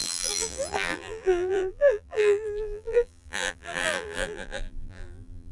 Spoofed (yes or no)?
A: yes